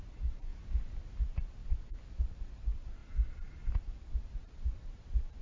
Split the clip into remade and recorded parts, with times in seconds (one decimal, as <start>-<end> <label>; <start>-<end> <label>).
0.0-0.5 remade; 0.5-1.2 recorded; 1.2-1.6 remade; 1.6-2.6 recorded; 2.6-3.0 remade; 3.0-4.0 recorded; 4.0-5.4 remade